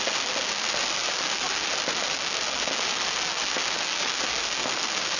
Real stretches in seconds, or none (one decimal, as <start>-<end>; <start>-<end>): 0.0-5.2